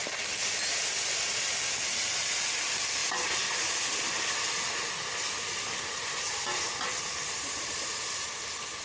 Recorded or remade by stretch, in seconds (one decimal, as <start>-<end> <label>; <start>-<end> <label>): 0.0-8.8 recorded